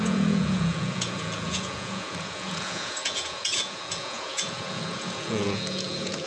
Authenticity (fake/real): fake